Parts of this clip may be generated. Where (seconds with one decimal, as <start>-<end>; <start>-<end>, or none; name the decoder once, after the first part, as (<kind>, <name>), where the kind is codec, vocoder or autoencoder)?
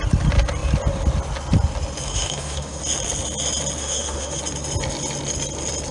2.1-2.8 (autoencoder, DAC-VAE); 3.8-4.4